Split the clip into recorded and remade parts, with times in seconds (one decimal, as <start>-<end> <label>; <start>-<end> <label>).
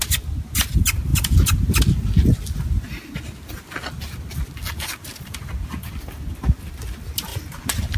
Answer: 0.0-8.0 recorded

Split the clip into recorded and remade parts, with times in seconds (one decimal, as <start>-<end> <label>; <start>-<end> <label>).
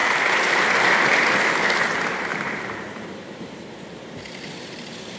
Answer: 0.0-2.3 recorded; 2.3-4.8 remade; 4.8-5.2 recorded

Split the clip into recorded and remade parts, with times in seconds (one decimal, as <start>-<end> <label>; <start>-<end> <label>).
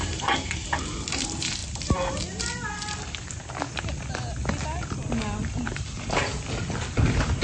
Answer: 0.0-1.6 remade; 1.6-5.4 recorded; 5.4-6.3 remade; 6.3-6.9 recorded; 6.9-7.4 remade